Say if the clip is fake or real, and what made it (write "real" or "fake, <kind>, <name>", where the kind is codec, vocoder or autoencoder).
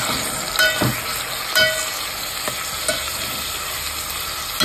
real